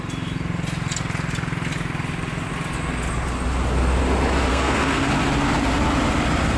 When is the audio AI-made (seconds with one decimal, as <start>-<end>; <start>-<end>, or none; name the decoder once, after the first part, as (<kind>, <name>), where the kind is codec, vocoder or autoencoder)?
4.5-5.1 (codec, SNAC)

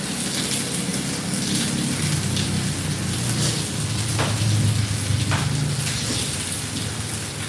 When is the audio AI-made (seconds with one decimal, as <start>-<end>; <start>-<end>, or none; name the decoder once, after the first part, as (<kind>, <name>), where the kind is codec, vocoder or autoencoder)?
none

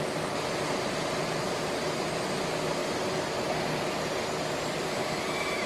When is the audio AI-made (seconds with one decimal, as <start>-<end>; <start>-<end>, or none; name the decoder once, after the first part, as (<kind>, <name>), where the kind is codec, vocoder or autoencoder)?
none

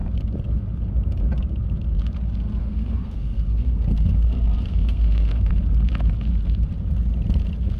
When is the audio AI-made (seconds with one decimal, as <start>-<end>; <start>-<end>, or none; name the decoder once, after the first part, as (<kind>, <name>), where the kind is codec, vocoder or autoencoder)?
2.6-5.5 (codec, SNAC)

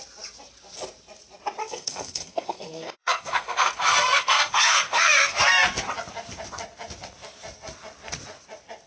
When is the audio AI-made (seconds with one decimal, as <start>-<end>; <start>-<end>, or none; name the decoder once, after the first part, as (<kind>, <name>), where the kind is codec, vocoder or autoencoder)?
1.6-5.4 (codec, SNAC)